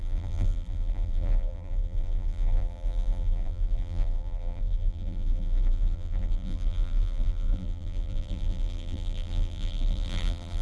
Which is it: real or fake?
fake